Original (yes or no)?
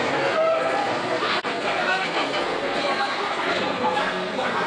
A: no